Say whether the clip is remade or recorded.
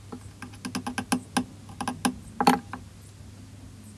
recorded